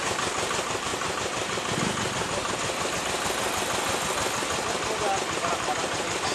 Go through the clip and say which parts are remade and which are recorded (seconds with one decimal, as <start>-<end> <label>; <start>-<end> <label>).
0.0-6.3 recorded